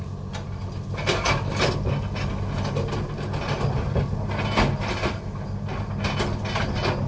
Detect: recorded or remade recorded